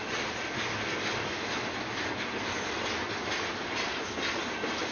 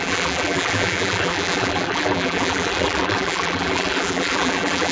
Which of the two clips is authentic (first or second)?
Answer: first